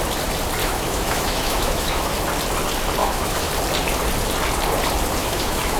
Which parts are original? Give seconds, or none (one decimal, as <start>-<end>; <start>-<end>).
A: 0.0-0.6; 2.1-3.0; 3.5-5.2